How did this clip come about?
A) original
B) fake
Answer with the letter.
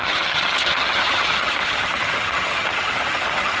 B